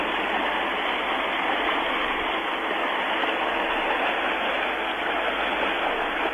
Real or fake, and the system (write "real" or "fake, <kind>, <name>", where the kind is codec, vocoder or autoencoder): real